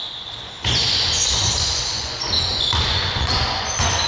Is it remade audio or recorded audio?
remade